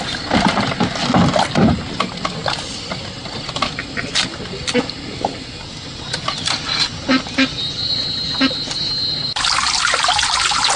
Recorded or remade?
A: recorded